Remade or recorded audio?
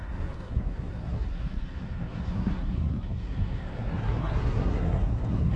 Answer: remade